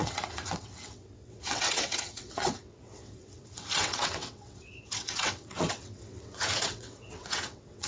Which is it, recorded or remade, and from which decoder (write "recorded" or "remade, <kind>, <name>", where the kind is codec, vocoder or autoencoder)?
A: remade, vocoder, WaveNeXt